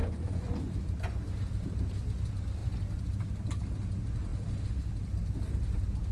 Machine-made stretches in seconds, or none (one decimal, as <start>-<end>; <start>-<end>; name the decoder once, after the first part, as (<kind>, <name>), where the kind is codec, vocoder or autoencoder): 0.0-1.2 (vocoder, Vocos)